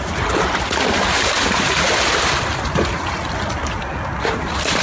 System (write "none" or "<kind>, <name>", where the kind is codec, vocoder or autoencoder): none